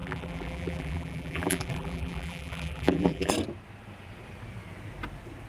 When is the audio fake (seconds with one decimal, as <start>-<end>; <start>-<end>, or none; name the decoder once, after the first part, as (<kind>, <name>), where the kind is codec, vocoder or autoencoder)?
0.0-3.3 (vocoder, BigVGAN v2)